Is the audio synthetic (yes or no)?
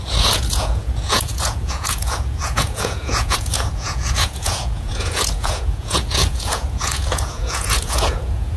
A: yes